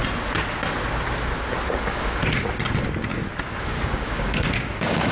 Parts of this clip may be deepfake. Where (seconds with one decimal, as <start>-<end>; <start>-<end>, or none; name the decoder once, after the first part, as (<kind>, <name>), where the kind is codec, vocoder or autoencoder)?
1.7-2.2 (codec, DAC); 3.5-5.1